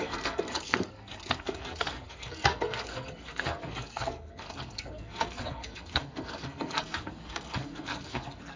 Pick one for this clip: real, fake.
fake